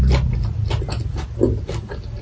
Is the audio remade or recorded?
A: recorded